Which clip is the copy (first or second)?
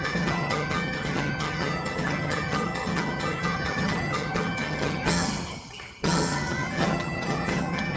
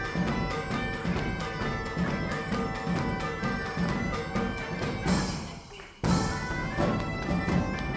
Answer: first